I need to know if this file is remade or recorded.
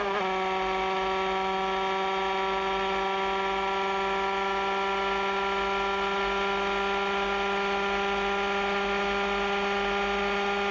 recorded